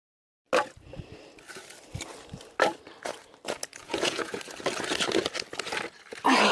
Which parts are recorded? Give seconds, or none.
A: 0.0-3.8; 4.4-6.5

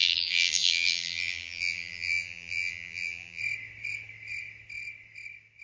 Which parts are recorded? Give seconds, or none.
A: 3.4-5.6

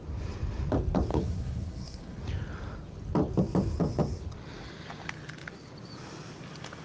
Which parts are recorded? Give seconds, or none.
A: 0.0-1.1; 2.2-6.8

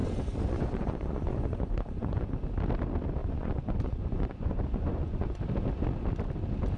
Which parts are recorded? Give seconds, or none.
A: 2.3-3.2; 5.4-6.8

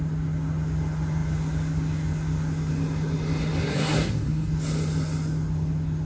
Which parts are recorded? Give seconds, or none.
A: 0.0-3.6; 4.5-6.0